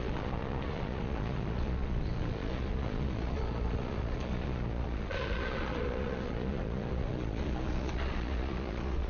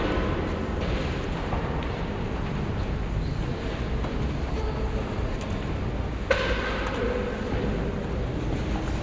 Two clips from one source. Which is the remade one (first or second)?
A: first